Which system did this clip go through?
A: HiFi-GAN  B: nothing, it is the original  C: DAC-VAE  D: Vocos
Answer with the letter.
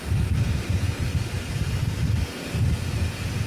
B